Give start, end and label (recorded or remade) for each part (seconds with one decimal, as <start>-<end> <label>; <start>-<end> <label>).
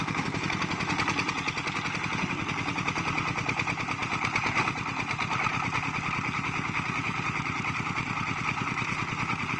0.0-4.0 remade; 4.0-7.0 recorded; 7.0-9.6 remade